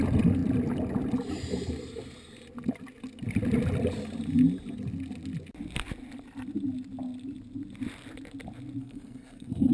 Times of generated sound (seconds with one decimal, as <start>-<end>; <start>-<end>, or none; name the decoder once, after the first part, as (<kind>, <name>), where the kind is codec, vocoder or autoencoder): 8.8-9.7 (codec, SNAC)